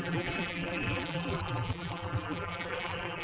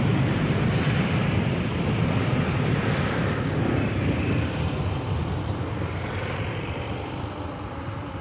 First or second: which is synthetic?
first